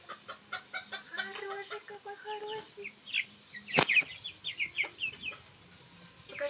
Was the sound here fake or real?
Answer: real